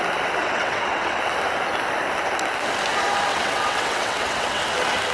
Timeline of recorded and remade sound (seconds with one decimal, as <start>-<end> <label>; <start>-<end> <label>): 0.0-0.4 recorded; 0.4-1.2 remade; 1.2-3.3 recorded; 3.3-4.6 remade; 4.6-5.1 recorded